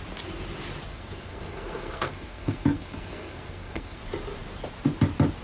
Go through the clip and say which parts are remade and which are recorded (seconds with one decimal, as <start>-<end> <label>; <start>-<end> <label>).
0.0-0.9 recorded; 0.9-4.0 remade; 4.0-5.4 recorded